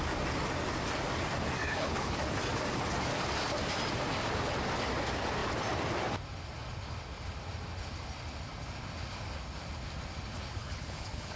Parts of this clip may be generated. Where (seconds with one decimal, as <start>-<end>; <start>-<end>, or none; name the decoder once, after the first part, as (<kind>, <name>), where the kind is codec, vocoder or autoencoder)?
1.6-2.2 (codec, HILCodec); 10.6-11.4